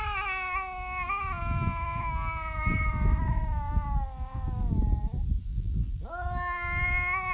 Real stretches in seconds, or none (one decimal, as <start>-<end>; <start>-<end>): 0.0-5.5; 6.0-7.3